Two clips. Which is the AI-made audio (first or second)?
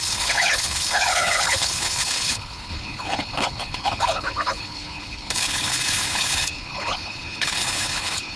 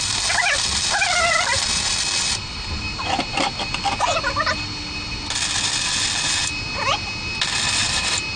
first